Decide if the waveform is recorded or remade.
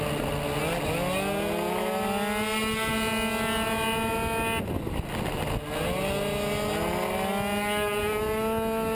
recorded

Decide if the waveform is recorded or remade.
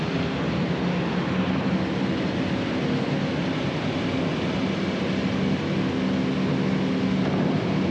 recorded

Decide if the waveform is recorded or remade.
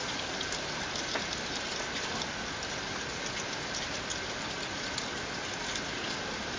recorded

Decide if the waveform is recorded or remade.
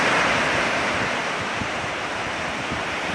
remade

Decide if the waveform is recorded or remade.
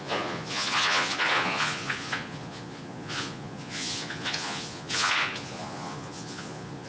remade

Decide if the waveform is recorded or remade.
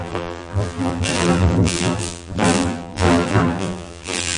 remade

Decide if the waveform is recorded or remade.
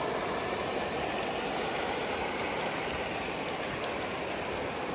recorded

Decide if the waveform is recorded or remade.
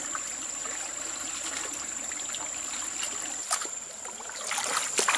recorded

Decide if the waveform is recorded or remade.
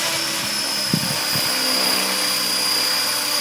recorded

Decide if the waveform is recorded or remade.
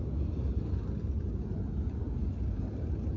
recorded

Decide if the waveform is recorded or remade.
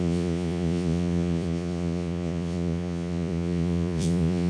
remade